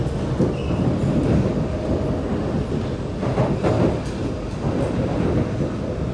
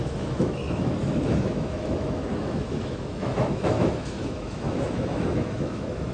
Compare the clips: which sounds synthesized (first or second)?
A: second